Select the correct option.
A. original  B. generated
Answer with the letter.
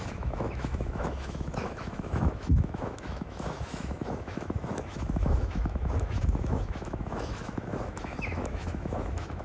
B